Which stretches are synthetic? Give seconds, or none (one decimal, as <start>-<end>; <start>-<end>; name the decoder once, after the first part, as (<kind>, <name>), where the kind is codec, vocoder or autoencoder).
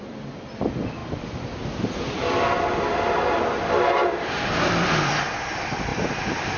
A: none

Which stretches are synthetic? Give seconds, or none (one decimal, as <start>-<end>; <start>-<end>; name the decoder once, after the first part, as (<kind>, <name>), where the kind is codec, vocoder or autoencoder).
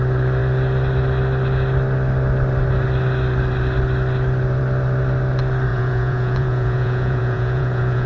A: 5.7-8.1 (vocoder, Vocos)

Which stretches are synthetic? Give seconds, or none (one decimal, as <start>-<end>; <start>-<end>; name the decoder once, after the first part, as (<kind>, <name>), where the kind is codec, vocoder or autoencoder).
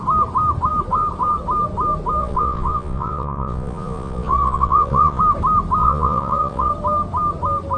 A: 2.2-5.2 (vocoder, Vocos); 5.8-6.7